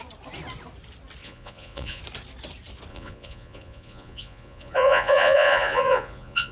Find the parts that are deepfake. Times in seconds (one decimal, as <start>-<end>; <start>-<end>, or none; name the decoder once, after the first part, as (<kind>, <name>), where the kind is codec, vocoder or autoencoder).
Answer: 1.2-2.0 (vocoder, Vocos); 2.9-6.5